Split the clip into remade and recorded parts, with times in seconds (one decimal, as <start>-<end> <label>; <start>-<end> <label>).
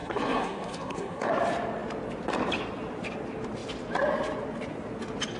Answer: 0.0-1.3 remade; 1.3-5.4 recorded